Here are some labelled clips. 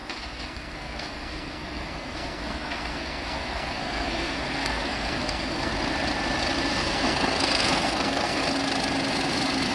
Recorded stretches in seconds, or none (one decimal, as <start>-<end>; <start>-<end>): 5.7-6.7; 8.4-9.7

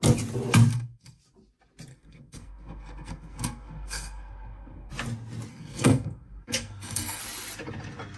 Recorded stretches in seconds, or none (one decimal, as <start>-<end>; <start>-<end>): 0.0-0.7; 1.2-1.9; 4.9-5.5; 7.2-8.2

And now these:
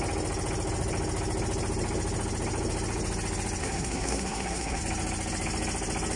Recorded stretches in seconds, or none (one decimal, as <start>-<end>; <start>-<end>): 0.0-3.6; 4.8-6.2

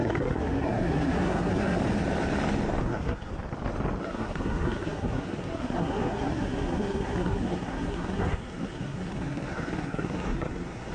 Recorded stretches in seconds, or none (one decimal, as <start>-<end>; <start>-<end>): 1.8-2.8; 3.3-4.0